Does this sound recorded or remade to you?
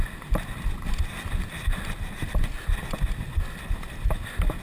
recorded